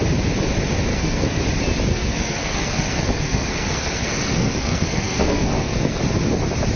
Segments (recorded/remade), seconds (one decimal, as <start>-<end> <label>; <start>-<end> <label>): 0.0-0.9 recorded; 0.9-1.4 remade; 1.4-1.9 recorded; 1.9-6.0 remade; 6.0-6.8 recorded